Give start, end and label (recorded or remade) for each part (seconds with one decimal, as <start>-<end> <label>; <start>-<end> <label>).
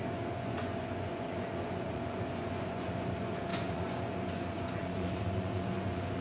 0.0-6.2 remade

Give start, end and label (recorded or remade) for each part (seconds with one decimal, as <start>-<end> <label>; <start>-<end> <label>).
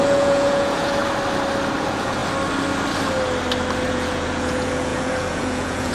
0.0-1.0 remade; 1.0-1.8 recorded; 1.8-2.2 remade; 2.2-3.9 recorded; 3.9-5.9 remade